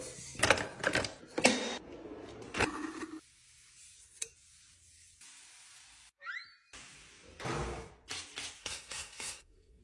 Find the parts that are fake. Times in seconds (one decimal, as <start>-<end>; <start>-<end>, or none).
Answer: 8.6-9.8

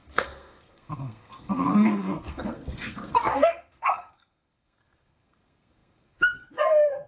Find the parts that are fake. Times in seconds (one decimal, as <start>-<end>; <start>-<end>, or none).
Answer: 0.0-7.1